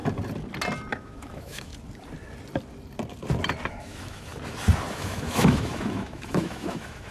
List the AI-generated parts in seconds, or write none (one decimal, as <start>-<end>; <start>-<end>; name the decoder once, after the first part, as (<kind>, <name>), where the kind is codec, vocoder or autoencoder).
0.9-1.7 (autoencoder, DAC-VAE); 3.7-4.3; 4.9-7.1